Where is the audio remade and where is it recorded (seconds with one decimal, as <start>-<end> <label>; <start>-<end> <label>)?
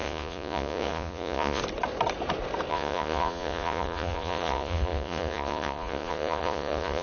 0.0-1.6 remade; 1.6-2.7 recorded; 2.7-7.0 remade